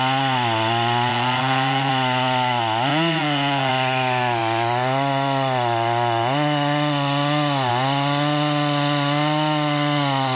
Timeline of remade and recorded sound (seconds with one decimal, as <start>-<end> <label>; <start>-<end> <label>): 0.0-1.1 recorded; 1.1-1.9 remade; 1.9-2.9 recorded; 2.9-3.7 remade; 3.7-10.4 recorded